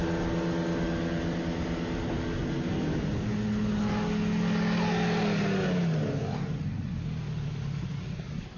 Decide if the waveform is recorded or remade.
recorded